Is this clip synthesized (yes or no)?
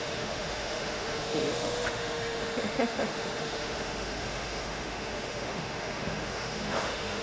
yes